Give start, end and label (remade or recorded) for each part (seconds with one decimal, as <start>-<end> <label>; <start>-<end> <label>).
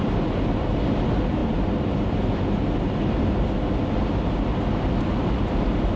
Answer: 0.0-6.0 recorded